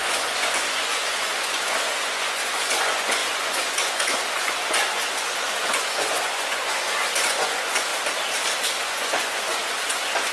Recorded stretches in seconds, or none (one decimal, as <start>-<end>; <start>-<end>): 7.9-8.8